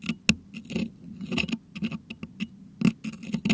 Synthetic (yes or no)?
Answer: no